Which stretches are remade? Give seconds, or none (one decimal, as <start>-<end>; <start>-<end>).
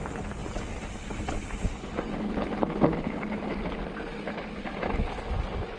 none